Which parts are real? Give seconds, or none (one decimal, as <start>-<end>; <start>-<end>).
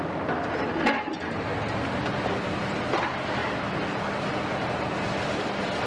0.0-5.9